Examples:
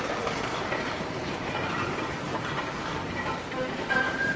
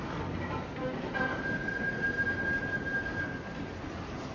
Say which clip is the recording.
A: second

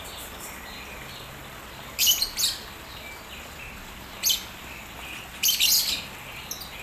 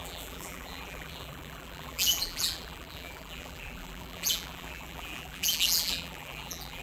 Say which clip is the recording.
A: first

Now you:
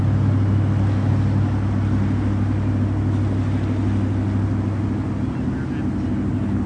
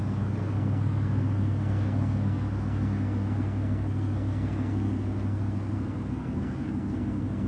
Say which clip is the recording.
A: first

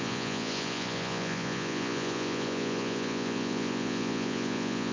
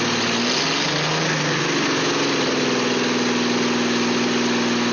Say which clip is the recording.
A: second